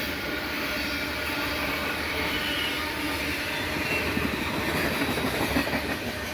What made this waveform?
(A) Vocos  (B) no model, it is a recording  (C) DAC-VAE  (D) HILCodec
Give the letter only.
B